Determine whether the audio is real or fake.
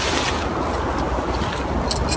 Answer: real